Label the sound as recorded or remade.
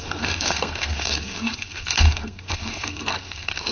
remade